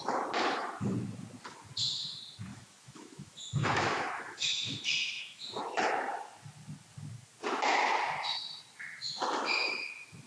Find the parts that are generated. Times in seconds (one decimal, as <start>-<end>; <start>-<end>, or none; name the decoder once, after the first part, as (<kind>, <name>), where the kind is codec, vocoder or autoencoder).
2.5-5.6 (autoencoder, DAC-VAE)